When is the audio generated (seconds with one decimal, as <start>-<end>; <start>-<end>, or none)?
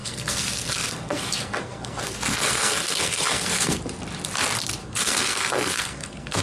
0.0-3.8; 4.8-6.4